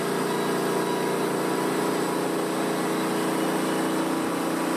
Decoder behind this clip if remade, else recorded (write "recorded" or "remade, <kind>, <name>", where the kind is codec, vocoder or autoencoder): recorded